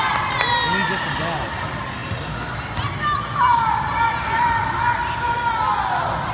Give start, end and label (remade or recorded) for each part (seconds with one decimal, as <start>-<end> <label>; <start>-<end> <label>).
0.0-6.3 recorded